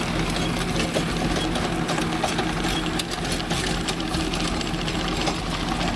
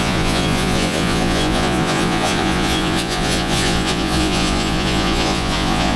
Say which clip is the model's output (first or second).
second